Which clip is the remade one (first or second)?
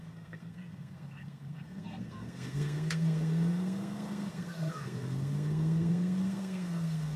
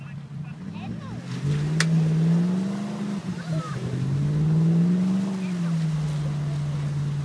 first